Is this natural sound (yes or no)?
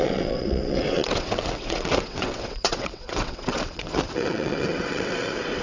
no